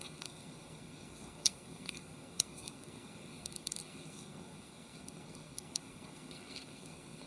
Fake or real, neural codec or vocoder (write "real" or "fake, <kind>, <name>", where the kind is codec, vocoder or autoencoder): fake, codec, SNAC